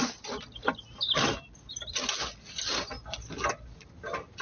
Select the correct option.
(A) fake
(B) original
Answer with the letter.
B